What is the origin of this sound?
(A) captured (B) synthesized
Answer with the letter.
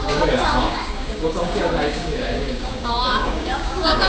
B